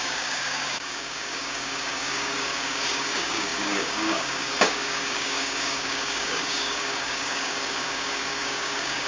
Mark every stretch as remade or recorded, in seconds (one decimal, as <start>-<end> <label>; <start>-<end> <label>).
0.0-9.1 remade